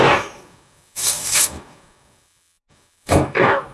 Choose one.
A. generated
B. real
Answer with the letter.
A